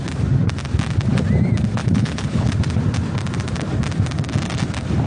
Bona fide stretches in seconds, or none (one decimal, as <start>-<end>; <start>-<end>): 0.0-1.8; 2.5-5.1